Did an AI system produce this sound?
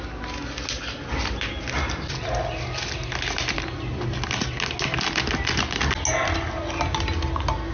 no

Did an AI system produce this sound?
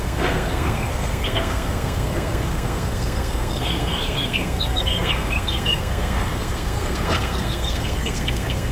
yes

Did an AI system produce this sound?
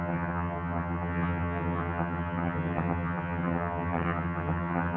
yes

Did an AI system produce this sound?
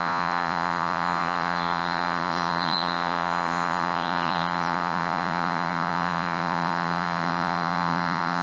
yes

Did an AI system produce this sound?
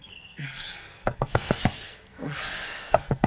yes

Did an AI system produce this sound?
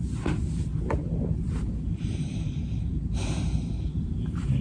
yes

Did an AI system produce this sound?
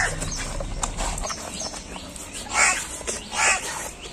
no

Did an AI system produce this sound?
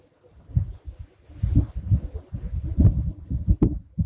no